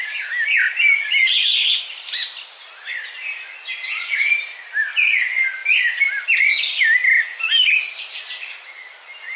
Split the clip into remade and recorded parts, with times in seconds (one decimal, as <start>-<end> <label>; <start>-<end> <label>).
0.0-9.4 recorded